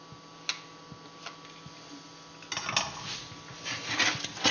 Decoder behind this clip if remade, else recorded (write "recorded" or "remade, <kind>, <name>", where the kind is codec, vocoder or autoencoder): recorded